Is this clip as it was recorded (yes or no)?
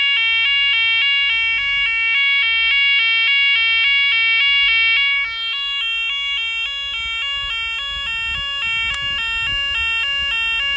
yes